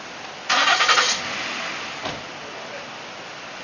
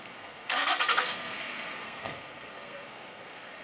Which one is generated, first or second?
second